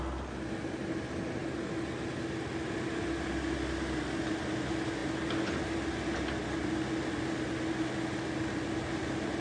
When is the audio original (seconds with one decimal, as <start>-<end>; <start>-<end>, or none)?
0.0-9.4

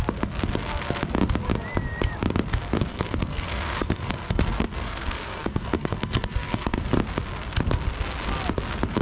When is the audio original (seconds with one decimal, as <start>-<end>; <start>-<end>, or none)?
0.0-2.9; 6.8-9.0

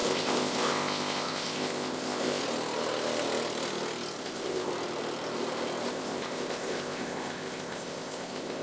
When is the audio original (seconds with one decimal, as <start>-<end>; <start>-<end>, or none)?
2.4-4.2; 4.7-5.9

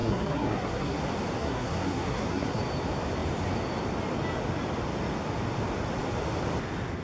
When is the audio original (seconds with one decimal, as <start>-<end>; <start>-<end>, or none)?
1.0-1.4; 2.6-7.0